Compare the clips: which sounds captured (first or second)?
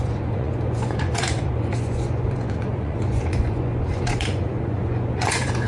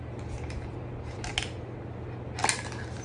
second